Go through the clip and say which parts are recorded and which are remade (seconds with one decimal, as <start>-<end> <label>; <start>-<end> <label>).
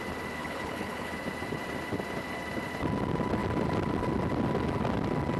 0.0-0.4 recorded; 0.4-1.1 remade; 1.1-5.4 recorded